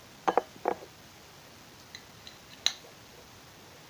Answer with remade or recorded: recorded